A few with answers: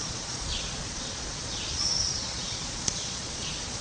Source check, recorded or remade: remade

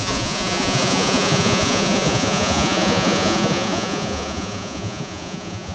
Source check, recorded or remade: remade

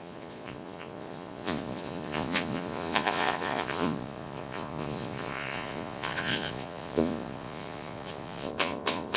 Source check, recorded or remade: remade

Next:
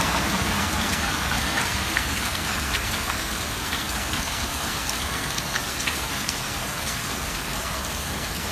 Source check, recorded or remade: remade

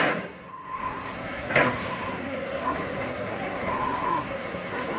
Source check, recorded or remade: remade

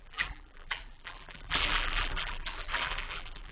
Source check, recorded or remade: remade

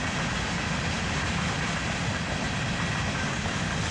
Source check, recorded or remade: recorded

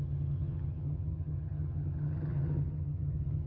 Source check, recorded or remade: remade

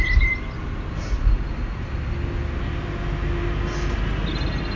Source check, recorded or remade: recorded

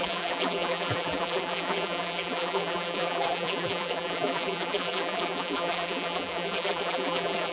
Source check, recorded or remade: remade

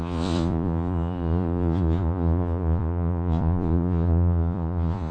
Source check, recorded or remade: remade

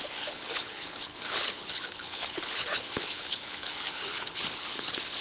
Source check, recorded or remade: remade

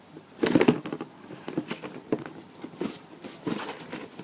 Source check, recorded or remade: recorded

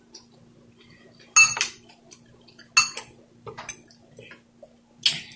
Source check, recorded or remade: recorded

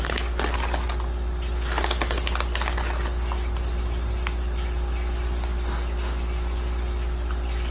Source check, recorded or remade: recorded